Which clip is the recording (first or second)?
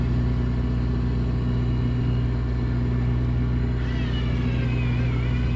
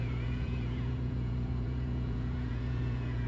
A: first